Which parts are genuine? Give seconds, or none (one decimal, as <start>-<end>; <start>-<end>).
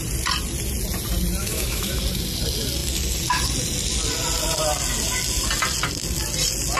0.0-1.4; 2.0-6.8